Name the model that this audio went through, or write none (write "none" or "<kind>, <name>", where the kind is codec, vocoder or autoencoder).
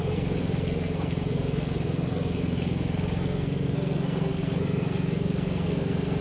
codec, SNAC